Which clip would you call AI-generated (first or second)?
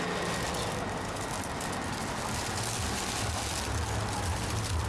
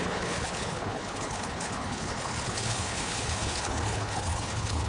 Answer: second